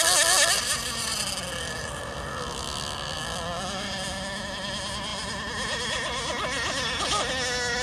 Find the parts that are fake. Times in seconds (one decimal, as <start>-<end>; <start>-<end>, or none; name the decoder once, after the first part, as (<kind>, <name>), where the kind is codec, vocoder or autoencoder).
none